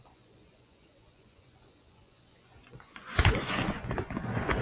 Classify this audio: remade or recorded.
remade